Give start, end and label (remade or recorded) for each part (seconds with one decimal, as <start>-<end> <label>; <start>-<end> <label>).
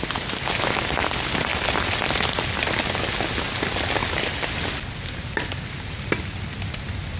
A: 0.0-7.2 recorded